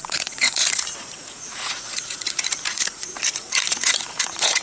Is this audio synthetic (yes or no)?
yes